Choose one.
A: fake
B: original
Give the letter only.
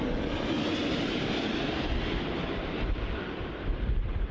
B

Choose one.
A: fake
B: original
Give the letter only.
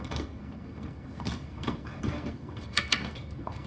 A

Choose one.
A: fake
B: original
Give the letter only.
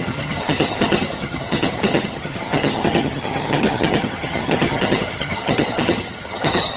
A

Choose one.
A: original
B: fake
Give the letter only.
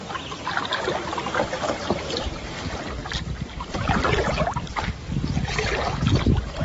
A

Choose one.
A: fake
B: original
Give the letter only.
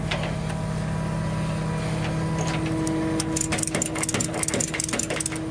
B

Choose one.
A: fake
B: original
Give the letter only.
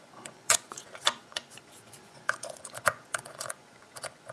A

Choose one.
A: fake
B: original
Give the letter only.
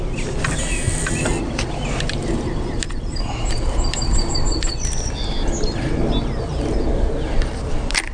B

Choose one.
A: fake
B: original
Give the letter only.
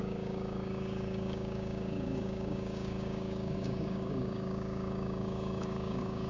A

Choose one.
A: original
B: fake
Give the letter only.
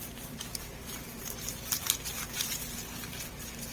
B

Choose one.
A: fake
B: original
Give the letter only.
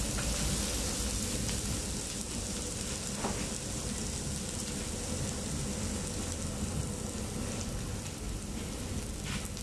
B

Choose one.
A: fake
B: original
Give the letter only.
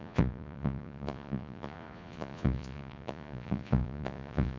A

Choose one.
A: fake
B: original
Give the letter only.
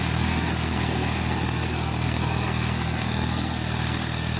A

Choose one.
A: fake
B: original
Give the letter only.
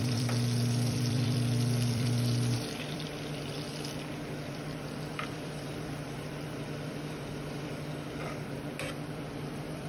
A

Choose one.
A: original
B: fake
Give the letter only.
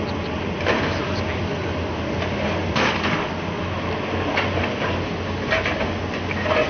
A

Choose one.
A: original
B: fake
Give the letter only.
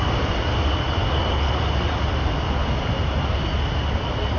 A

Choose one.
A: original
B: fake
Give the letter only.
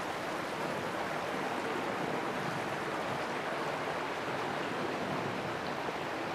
A